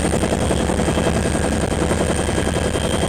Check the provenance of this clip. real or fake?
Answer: real